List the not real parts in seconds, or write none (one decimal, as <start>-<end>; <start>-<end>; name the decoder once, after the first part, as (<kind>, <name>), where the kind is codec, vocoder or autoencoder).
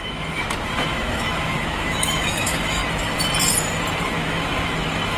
0.0-0.4 (autoencoder, DAC-VAE); 0.9-2.8; 4.0-5.2